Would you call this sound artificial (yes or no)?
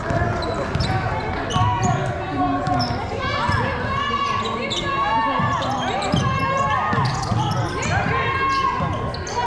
no